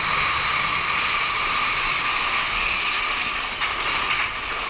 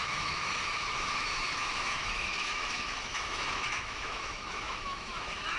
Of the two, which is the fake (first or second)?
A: second